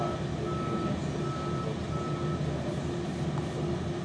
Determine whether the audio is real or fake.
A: real